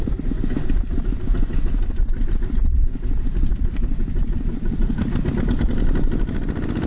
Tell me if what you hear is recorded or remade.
recorded